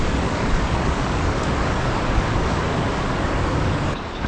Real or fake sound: fake